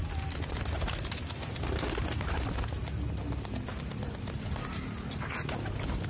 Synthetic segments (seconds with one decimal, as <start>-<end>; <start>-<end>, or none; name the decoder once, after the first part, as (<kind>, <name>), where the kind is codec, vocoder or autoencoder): none